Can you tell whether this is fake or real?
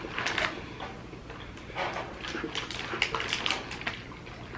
real